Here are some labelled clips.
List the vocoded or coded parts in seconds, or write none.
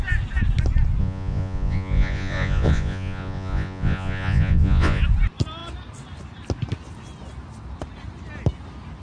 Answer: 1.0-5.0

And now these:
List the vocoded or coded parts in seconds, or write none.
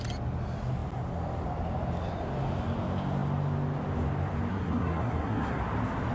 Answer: 4.5-5.6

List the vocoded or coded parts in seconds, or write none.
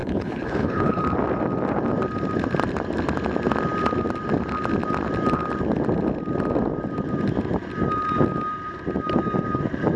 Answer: 0.0-1.0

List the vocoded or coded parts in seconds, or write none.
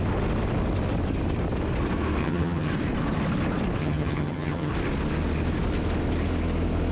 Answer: 2.2-2.7; 3.8-4.7